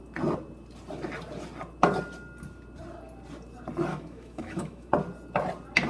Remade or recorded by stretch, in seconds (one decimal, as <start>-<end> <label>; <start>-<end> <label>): 0.0-3.9 recorded; 3.9-4.9 remade; 4.9-5.9 recorded